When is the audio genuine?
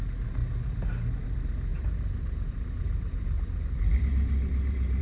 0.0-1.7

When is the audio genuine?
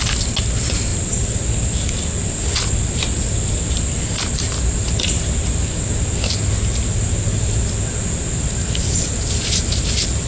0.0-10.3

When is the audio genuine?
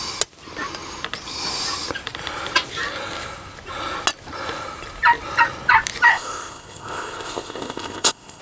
0.0-6.1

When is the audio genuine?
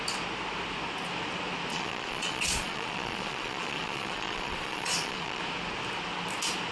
0.0-1.7; 5.4-6.7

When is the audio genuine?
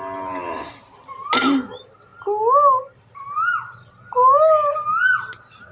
0.0-5.7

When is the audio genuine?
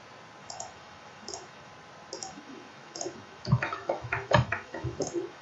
0.0-0.4; 1.7-2.2